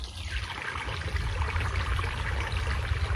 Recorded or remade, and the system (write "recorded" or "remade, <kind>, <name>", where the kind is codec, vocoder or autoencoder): recorded